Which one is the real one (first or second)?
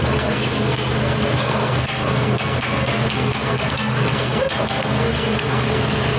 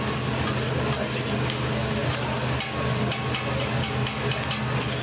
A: second